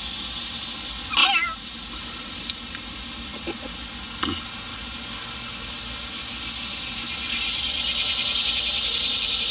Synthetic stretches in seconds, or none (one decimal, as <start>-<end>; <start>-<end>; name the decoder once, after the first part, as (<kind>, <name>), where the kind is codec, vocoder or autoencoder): 1.2-2.6 (vocoder, BigVGAN v2)